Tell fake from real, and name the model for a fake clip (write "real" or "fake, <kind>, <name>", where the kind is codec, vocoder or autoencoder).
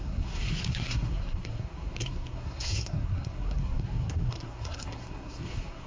fake, codec, SNAC